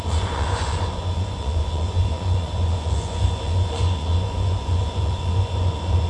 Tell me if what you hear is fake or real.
fake